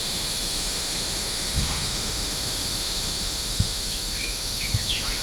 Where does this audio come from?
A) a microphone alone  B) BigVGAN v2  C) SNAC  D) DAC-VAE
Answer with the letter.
D